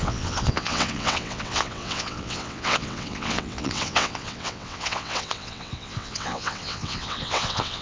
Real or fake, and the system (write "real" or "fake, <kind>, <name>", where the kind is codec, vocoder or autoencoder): fake, vocoder, WaveNeXt